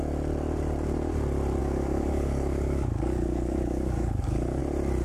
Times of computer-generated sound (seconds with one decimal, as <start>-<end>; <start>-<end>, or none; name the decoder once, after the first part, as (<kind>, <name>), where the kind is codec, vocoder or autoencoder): 1.6-4.6 (codec, DAC)